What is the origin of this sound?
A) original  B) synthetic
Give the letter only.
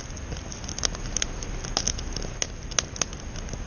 A